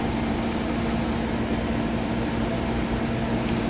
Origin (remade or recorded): recorded